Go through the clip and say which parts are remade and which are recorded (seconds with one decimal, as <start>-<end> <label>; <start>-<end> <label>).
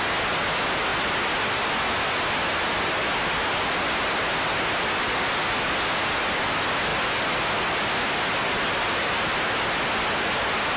0.0-10.8 recorded